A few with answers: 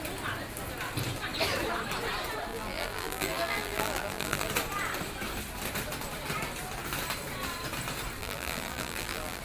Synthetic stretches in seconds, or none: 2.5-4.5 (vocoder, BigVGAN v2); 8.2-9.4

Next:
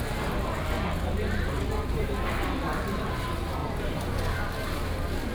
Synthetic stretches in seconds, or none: none

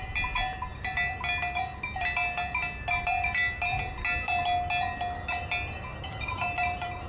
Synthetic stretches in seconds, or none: 5.9-7.1 (vocoder, BigVGAN v2)

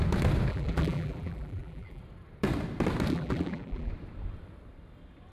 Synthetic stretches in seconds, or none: 0.5-2.0 (vocoder, BigVGAN v2); 3.1-3.9